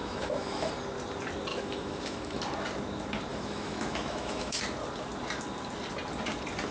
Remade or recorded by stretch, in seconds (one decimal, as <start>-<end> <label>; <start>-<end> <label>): 0.0-0.7 remade; 0.7-1.5 recorded; 1.5-2.4 remade; 2.4-3.3 recorded; 3.3-4.6 remade; 4.6-6.7 recorded